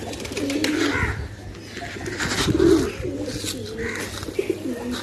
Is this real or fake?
real